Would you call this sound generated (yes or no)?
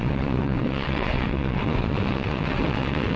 yes